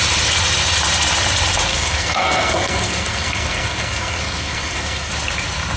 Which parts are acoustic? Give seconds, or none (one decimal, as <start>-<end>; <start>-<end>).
0.0-1.7; 5.1-5.8